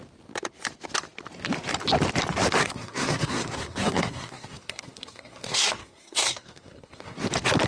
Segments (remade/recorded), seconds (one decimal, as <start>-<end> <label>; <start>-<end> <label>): 0.0-2.6 recorded; 2.6-7.2 remade; 7.2-7.7 recorded